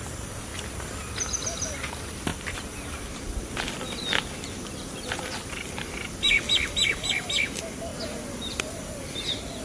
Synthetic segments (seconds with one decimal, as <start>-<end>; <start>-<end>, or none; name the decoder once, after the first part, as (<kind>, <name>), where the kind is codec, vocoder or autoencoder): 0.0-0.5 (vocoder, BigVGAN v2); 1.9-2.3; 3.6-7.9; 8.5-9.6